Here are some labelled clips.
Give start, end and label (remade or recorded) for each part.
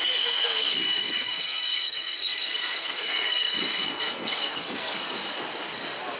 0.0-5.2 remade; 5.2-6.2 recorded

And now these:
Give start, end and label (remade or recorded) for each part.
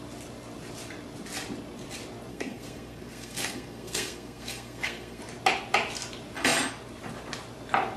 0.0-2.3 recorded; 2.3-5.2 remade; 5.2-8.0 recorded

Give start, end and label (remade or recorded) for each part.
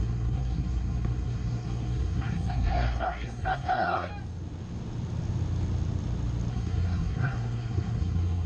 0.0-4.1 remade; 4.1-6.5 recorded; 6.5-8.5 remade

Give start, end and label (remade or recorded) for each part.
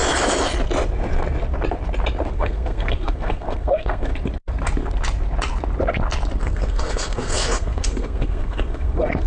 0.0-2.3 recorded; 2.3-4.1 remade; 4.1-6.4 recorded; 6.4-9.3 remade